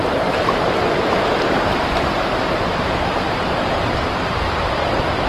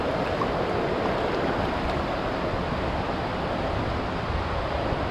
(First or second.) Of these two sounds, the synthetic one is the first